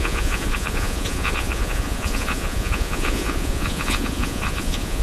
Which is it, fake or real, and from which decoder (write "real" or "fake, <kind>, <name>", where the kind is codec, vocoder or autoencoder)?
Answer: fake, vocoder, Vocos